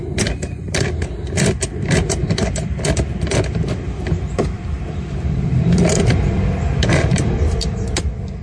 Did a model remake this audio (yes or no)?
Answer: yes